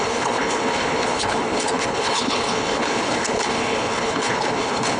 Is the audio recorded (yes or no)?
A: no